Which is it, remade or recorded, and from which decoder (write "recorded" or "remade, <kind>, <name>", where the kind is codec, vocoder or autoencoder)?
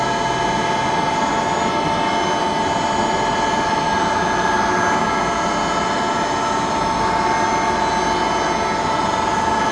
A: recorded